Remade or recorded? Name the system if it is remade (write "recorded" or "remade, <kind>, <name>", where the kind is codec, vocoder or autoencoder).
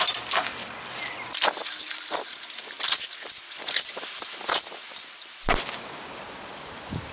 recorded